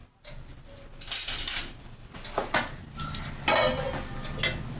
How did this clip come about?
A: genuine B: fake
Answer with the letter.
A